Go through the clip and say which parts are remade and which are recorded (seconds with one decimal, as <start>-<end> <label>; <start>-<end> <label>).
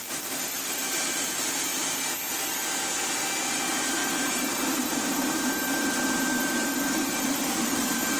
0.0-1.7 remade; 1.7-3.5 recorded; 3.5-8.2 remade